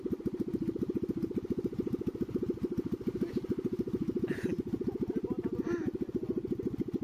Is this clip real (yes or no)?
yes